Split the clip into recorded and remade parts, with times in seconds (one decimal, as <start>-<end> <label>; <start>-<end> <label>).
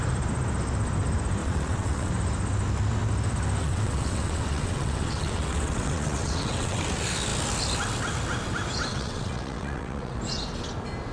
0.0-1.4 recorded; 1.4-2.1 remade; 2.1-3.6 recorded; 3.6-6.8 remade; 6.8-8.9 recorded; 8.9-10.2 remade; 10.2-11.1 recorded